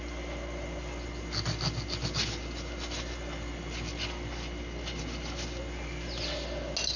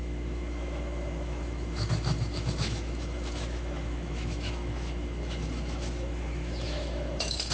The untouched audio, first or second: first